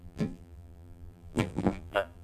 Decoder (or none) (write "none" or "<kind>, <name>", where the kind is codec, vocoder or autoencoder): vocoder, BigVGAN v2